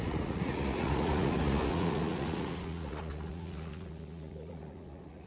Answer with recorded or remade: remade